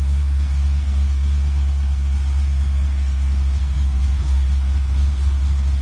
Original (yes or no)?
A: no